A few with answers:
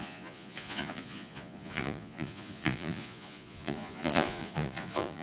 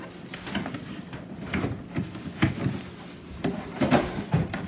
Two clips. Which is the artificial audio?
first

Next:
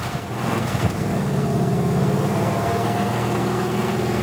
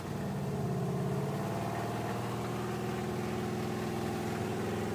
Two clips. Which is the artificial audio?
first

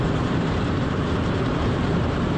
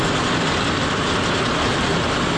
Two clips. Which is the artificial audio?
first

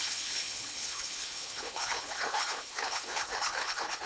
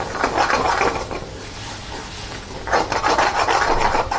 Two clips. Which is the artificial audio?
first